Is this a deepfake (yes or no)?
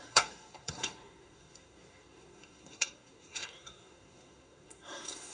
yes